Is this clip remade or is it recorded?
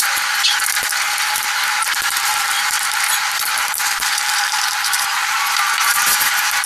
remade